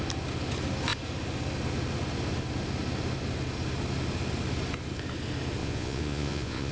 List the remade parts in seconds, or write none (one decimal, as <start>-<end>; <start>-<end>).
5.6-6.7